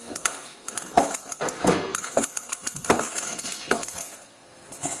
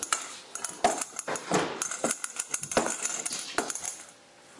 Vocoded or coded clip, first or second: first